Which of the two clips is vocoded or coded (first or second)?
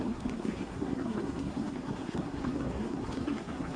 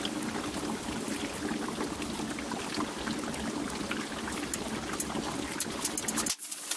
first